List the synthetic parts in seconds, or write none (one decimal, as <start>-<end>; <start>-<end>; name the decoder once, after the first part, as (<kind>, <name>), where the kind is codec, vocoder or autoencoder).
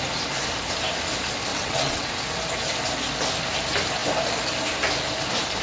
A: 1.5-2.1 (vocoder, WaveNeXt)